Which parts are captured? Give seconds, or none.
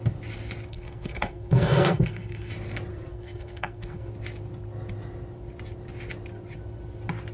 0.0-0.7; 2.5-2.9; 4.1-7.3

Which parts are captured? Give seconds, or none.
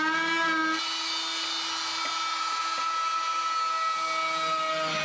0.0-5.0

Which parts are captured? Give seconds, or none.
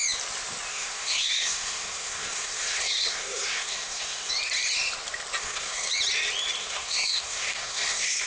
0.0-0.7; 4.3-5.4; 5.9-6.6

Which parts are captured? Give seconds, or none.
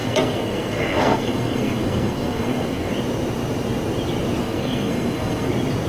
2.9-4.4; 5.5-5.9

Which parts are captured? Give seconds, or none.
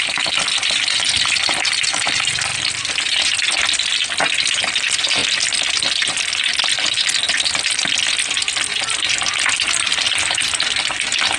0.0-11.4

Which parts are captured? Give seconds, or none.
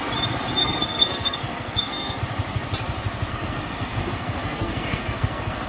0.0-0.6; 2.2-3.3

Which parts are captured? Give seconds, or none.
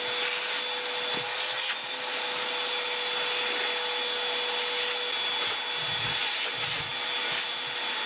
0.0-8.1